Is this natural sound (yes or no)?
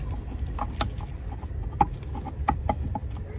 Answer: yes